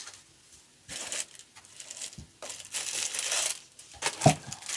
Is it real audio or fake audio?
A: real